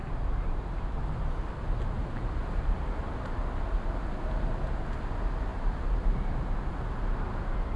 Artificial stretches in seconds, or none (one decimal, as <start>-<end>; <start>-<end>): 0.0-1.5; 2.4-3.4; 5.5-6.7